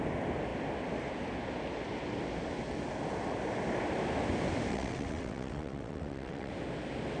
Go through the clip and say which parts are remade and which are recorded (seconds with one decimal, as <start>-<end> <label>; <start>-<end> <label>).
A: 0.0-4.7 recorded; 4.7-6.5 remade; 6.5-7.2 recorded